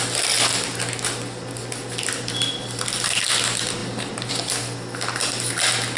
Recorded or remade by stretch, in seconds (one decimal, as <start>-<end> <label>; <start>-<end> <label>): 0.0-6.0 recorded